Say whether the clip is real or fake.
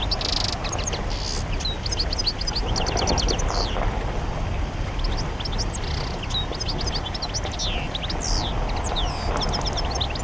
real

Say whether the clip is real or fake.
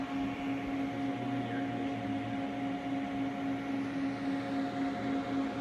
real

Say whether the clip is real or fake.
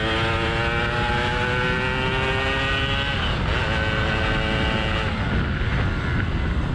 real